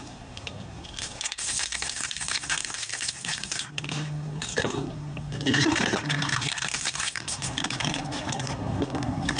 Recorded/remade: remade